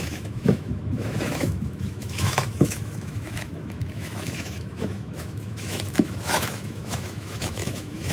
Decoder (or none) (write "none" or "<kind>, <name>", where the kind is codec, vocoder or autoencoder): autoencoder, DAC-VAE